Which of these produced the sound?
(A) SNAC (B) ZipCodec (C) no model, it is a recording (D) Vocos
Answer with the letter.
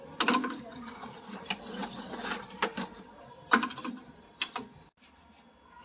C